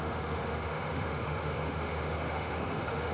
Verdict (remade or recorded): remade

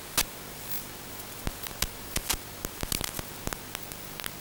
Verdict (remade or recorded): recorded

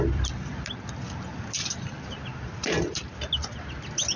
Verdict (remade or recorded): recorded